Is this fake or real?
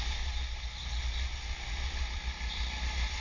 real